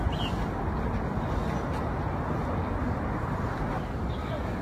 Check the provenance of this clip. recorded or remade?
recorded